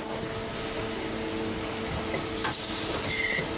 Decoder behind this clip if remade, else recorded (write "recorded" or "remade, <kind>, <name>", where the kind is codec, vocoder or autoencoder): recorded